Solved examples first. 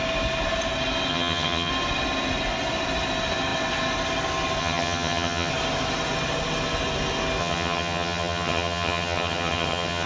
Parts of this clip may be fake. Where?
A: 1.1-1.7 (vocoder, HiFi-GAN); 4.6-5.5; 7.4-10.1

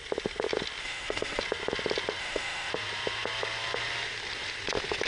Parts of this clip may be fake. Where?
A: 0.8-1.4 (autoencoder, DAC-VAE); 2.2-2.7

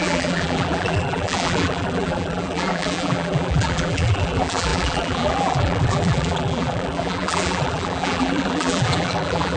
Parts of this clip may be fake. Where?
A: 0.0-9.6 (vocoder, BigVGAN v2)